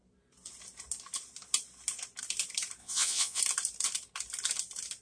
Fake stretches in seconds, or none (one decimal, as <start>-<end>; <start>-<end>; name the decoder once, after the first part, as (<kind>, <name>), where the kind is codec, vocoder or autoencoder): 2.8-3.4 (vocoder, Vocos)